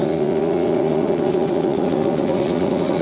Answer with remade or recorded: remade